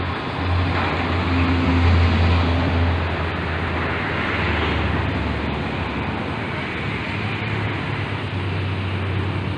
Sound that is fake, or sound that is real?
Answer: real